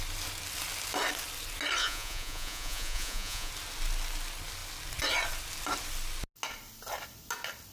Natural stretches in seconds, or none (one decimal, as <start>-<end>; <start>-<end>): 0.0-1.8; 3.5-7.7